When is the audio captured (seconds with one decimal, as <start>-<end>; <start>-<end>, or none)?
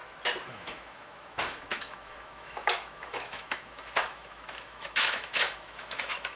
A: 0.0-0.5